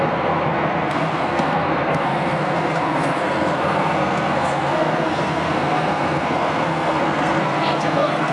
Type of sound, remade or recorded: remade